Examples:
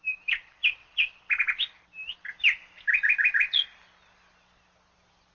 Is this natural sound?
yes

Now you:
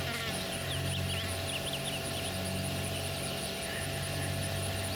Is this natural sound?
yes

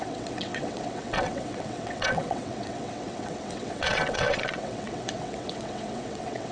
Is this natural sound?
no